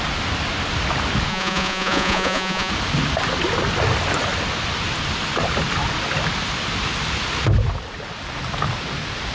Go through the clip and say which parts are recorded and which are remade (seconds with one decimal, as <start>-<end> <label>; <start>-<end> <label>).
0.0-1.3 recorded; 1.3-2.7 remade; 2.7-9.3 recorded